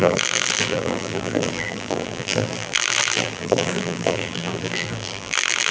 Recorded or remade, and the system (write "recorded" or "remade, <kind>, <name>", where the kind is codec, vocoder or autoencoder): remade, vocoder, BigVGAN v2